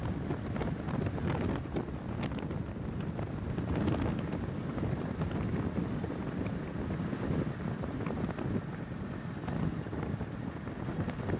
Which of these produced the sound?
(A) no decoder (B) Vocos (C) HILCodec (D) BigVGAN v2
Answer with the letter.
A